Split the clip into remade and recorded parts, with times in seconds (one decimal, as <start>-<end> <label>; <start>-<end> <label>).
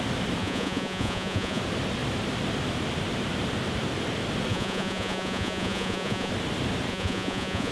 0.0-0.4 recorded; 0.4-1.6 remade; 1.6-4.5 recorded; 4.5-6.3 remade; 6.3-6.9 recorded; 6.9-7.7 remade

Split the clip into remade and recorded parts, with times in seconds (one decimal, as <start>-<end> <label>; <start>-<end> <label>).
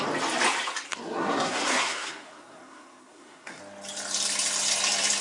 0.0-0.9 recorded; 0.9-3.6 remade; 3.6-5.2 recorded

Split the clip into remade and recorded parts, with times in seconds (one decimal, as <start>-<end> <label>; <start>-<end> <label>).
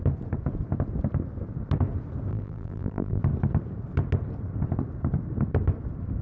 0.0-2.3 recorded; 2.3-3.2 remade; 3.2-6.2 recorded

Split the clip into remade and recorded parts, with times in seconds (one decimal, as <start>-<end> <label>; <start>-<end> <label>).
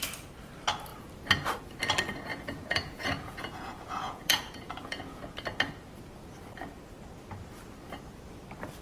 0.0-2.3 recorded; 2.3-5.2 remade; 5.2-8.8 recorded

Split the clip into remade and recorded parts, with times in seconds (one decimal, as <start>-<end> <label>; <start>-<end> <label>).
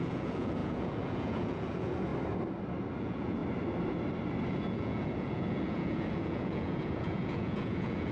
0.0-2.1 remade; 2.1-3.0 recorded; 3.0-3.4 remade; 3.4-4.5 recorded; 4.5-8.1 remade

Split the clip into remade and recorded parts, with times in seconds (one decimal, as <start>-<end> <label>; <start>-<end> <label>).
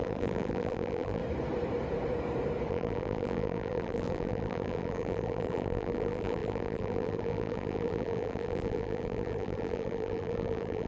0.0-1.2 remade; 1.2-2.7 recorded; 2.7-10.9 remade